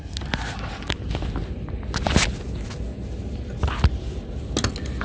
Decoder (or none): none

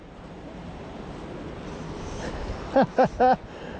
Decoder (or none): none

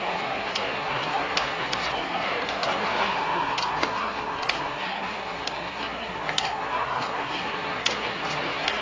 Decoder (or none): codec, SNAC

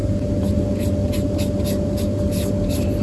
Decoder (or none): none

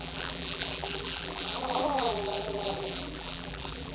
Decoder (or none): vocoder, BigVGAN v2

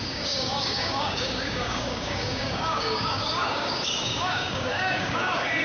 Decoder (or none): codec, DAC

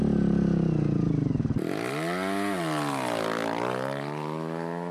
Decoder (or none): none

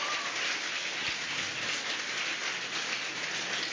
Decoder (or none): none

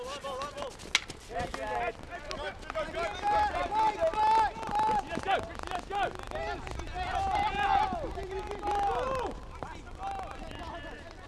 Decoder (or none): none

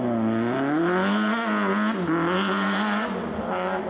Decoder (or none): none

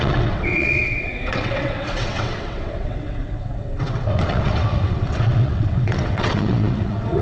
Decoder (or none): vocoder, WaveNeXt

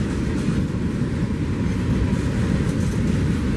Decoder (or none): none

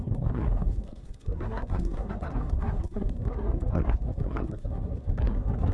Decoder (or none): codec, SNAC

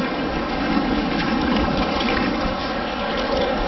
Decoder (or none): codec, DAC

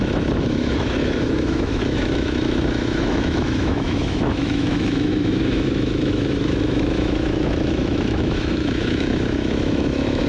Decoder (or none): autoencoder, DAC-VAE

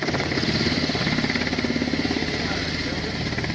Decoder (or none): none